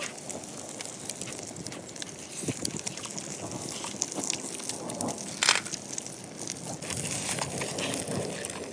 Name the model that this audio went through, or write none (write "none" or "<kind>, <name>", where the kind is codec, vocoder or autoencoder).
none